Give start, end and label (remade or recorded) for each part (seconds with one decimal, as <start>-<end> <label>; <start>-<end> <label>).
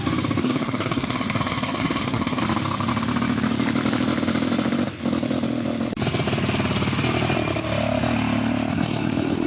0.0-0.4 recorded; 0.4-2.4 remade; 2.4-8.7 recorded; 8.7-9.5 remade